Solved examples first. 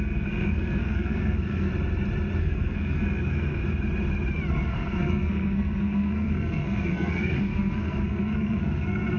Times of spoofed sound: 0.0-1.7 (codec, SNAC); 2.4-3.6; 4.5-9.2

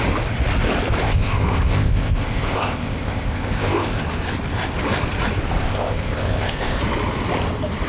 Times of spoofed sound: 1.0-4.0 (codec, ZipCodec); 5.6-6.8

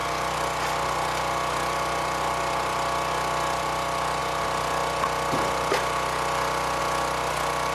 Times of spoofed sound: none

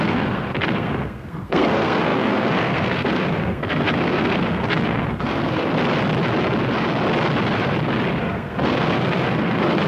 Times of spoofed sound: 0.0-5.7 (codec, SNAC); 8.2-9.9

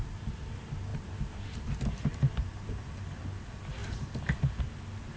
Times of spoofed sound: 0.9-2.9 (vocoder, BigVGAN v2)